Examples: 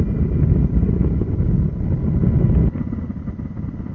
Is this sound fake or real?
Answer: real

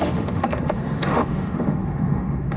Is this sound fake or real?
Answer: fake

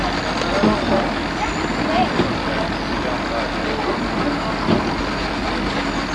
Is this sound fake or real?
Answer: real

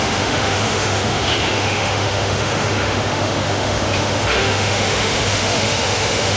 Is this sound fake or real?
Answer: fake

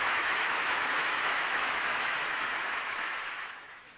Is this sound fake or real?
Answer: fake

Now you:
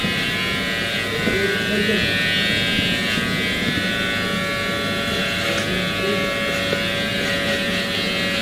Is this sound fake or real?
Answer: real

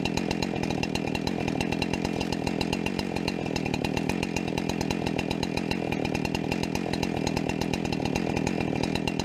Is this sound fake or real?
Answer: real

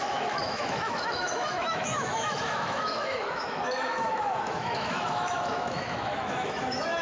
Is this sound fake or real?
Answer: fake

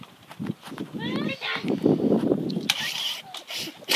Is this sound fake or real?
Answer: real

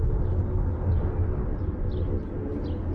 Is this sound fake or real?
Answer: real